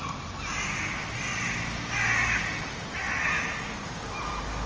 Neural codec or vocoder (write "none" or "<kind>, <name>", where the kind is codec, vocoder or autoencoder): none